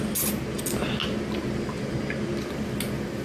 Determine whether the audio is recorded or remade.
recorded